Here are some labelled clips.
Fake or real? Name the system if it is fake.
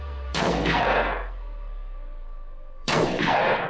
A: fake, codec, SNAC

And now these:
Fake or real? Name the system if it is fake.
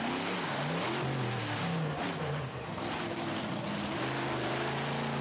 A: real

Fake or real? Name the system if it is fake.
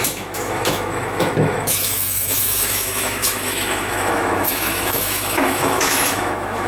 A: fake, autoencoder, DAC-VAE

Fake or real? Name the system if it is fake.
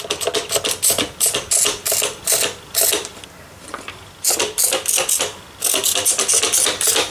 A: real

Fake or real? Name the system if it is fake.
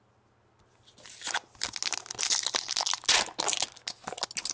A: real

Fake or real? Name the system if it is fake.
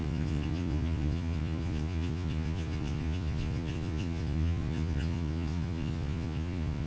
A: fake, vocoder, Vocos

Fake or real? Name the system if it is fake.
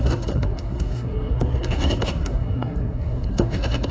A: fake, codec, SNAC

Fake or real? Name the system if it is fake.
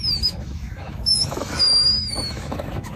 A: fake, autoencoder, DAC-VAE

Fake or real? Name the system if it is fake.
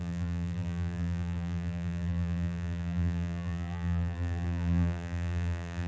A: fake, vocoder, BigVGAN v2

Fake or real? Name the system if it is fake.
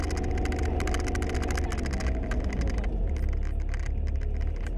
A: real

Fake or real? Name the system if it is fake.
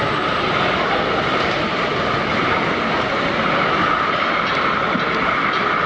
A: real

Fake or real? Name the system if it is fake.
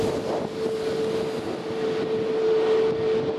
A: real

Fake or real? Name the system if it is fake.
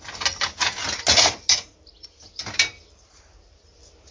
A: real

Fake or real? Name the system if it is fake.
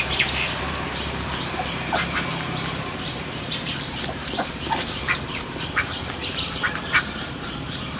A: fake, vocoder, BigVGAN v2